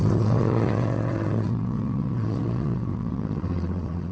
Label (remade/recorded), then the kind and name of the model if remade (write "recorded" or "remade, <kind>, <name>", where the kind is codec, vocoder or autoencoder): remade, vocoder, WaveNeXt